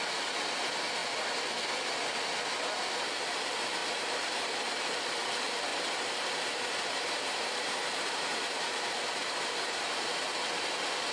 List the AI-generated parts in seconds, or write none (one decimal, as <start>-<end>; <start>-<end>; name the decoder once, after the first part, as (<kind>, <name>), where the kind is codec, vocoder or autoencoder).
3.8-4.9 (vocoder, BigVGAN v2); 5.7-10.1